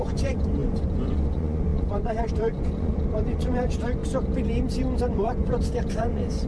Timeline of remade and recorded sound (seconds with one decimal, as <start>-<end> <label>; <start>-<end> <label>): 0.0-4.0 remade; 4.0-5.0 recorded; 5.0-6.5 remade